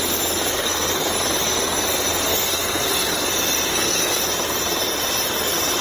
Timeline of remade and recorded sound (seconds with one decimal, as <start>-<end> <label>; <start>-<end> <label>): 0.0-0.5 recorded; 0.5-1.1 remade; 1.1-2.3 recorded; 2.3-3.3 remade; 3.3-3.7 recorded; 3.7-4.2 remade; 4.2-5.8 recorded